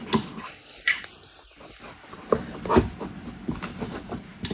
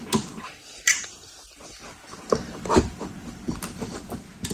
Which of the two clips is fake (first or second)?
second